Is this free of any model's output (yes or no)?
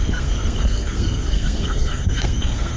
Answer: no